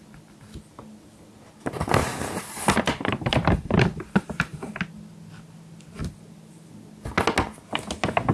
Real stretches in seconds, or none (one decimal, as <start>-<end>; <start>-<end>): 0.0-2.0; 4.8-6.0; 6.7-8.3